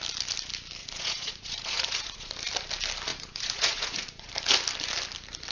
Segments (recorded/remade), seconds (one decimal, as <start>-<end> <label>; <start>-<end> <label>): 0.0-0.8 recorded; 0.8-2.3 remade; 2.3-3.1 recorded; 3.1-4.3 remade; 4.3-5.5 recorded